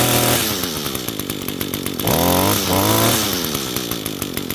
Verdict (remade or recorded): recorded